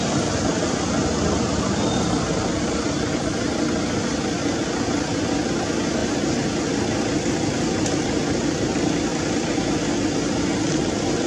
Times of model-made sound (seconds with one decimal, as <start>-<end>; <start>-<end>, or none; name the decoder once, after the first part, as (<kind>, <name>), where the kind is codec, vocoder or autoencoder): none